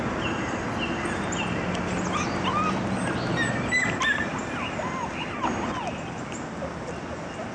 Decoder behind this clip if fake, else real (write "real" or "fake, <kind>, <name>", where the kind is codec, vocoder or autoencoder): real